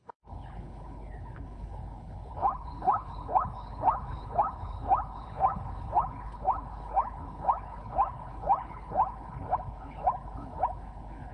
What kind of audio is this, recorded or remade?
remade